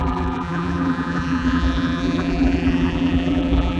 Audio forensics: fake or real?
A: fake